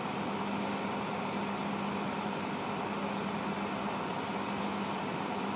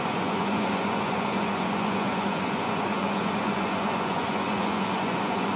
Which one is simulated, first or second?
second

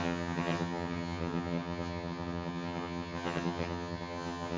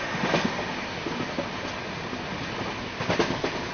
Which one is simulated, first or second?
first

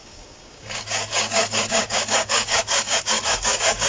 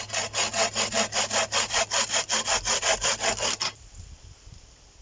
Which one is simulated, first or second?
first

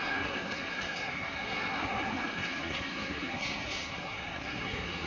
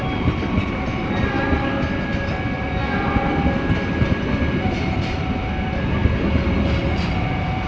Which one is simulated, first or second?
first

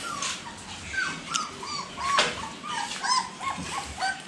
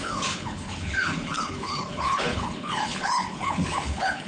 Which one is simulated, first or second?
second